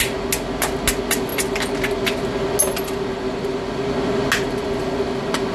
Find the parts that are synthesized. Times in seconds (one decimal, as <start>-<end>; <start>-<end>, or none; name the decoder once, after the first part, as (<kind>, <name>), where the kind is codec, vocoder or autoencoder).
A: none